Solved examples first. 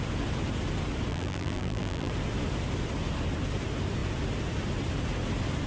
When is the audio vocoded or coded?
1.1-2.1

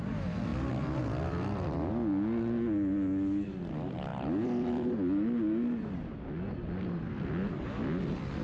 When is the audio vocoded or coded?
0.5-1.9; 4.1-4.9

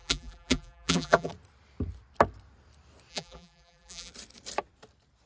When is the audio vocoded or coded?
0.0-1.3; 3.1-4.1